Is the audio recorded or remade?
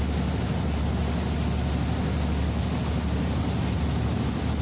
recorded